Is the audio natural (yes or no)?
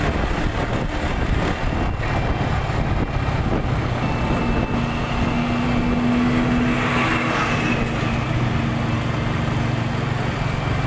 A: yes